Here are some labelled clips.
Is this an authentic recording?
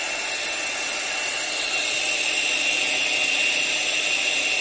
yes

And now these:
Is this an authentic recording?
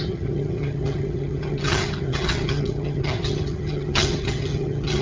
no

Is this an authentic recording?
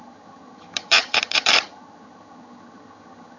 no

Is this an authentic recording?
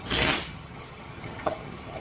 no